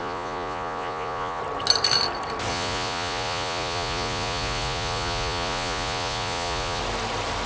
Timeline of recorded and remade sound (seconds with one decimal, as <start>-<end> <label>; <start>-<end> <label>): 0.0-1.4 remade; 1.4-2.5 recorded; 2.5-6.8 remade; 6.8-7.5 recorded